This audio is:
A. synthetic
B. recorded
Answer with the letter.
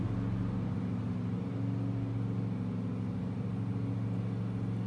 B